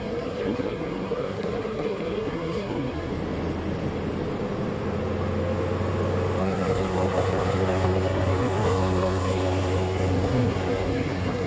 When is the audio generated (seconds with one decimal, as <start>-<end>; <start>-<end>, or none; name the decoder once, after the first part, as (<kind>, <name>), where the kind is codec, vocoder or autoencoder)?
0.0-3.1 (codec, SNAC); 6.4-11.5